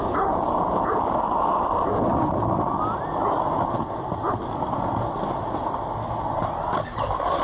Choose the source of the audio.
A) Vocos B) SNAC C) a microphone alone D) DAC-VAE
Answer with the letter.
C